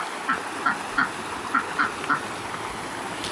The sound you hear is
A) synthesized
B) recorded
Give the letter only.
B